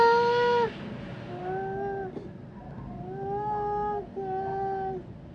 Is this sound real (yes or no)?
yes